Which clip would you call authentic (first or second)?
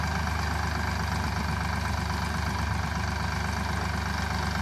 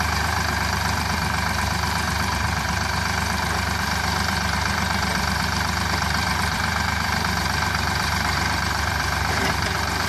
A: first